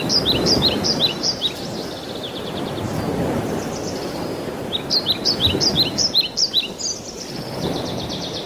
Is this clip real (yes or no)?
no